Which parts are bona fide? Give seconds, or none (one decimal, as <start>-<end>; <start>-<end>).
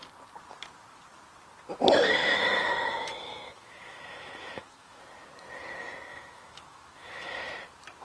0.0-2.2; 5.0-6.1; 7.5-8.0